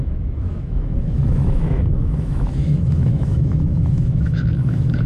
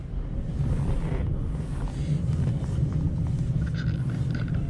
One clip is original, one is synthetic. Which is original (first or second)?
second